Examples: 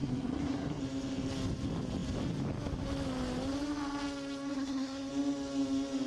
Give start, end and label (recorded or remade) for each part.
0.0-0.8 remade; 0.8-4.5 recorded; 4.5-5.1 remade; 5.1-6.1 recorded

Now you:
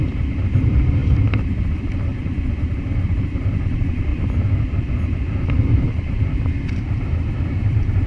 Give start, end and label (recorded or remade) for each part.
0.0-2.1 remade; 2.1-2.8 recorded; 2.8-4.1 remade; 4.1-6.2 recorded; 6.2-8.1 remade

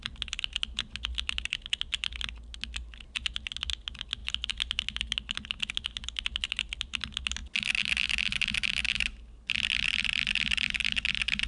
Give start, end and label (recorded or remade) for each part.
0.0-11.5 recorded

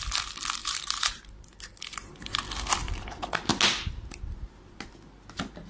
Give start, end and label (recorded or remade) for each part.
0.0-0.6 recorded; 0.6-1.2 remade; 1.2-1.9 recorded; 1.9-2.4 remade; 2.4-2.8 recorded; 2.8-3.5 remade; 3.5-5.7 recorded

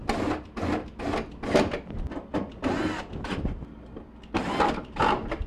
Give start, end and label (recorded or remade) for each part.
0.0-5.5 recorded

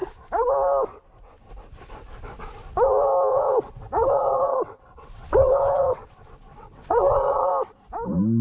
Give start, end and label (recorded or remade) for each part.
0.0-3.3 recorded; 3.3-7.5 remade; 7.5-8.4 recorded

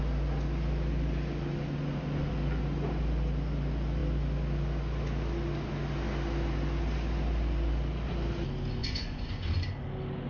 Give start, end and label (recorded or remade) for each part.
0.0-8.8 recorded; 8.8-9.5 remade; 9.5-10.3 recorded

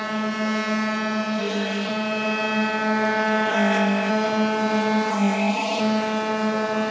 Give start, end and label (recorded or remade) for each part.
0.0-1.4 recorded; 1.4-1.9 remade; 1.9-3.5 recorded; 3.5-4.1 remade; 4.1-5.1 recorded; 5.1-5.8 remade; 5.8-6.9 recorded